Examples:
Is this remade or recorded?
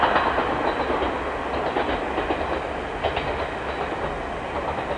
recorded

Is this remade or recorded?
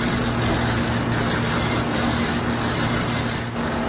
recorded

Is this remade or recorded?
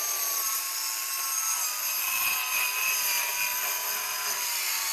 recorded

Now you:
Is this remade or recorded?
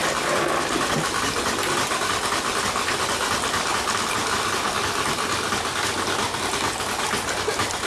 recorded